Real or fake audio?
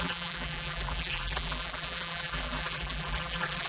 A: fake